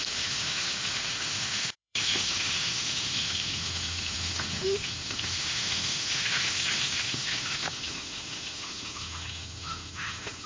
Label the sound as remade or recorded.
remade